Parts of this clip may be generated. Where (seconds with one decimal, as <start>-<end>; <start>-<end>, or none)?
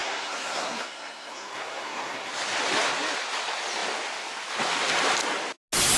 0.0-2.3